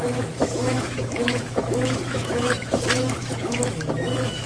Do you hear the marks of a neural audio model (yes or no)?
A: yes